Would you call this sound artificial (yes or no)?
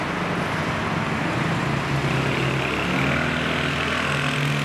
no